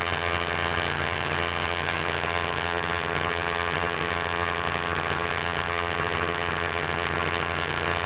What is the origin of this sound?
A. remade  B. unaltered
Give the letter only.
A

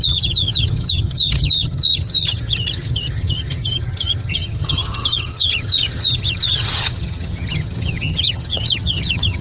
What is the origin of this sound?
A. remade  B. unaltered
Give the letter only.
A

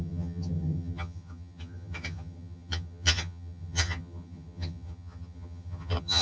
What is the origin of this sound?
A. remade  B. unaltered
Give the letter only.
A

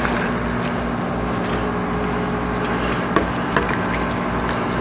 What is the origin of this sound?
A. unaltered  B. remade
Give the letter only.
A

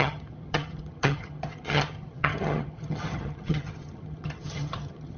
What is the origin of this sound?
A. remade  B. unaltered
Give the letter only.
A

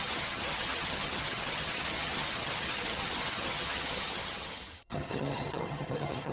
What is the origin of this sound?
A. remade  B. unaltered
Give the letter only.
A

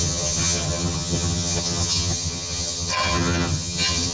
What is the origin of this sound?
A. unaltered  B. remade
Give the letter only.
B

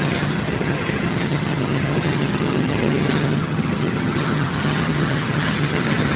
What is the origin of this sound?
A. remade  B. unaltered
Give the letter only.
A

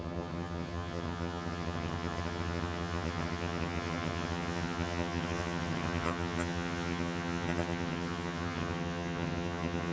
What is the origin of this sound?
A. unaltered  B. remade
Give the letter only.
B